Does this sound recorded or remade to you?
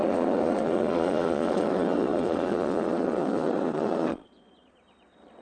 remade